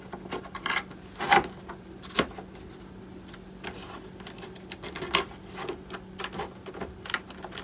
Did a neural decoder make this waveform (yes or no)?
no